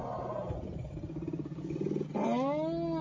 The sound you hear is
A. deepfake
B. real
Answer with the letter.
B